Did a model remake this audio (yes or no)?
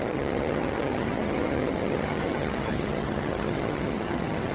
yes